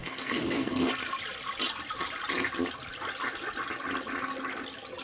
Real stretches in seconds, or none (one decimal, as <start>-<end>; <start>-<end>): 0.9-5.0